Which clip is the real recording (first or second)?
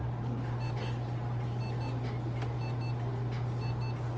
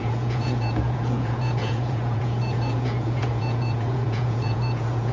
first